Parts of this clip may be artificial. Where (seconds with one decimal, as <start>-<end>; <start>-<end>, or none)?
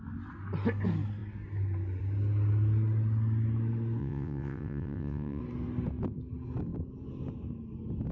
4.0-5.4